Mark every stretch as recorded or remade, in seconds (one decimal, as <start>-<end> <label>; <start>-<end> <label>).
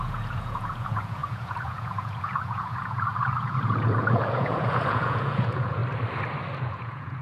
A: 0.0-5.8 remade; 5.8-6.6 recorded; 6.6-7.2 remade